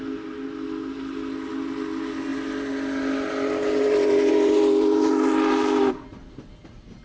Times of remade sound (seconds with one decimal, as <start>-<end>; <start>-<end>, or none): none